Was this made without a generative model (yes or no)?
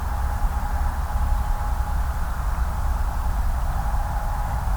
yes